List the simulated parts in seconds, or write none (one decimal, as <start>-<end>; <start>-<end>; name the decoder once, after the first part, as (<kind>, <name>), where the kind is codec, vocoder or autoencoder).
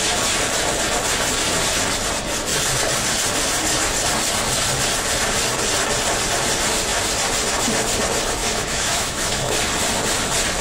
8.4-9.6 (autoencoder, DAC-VAE)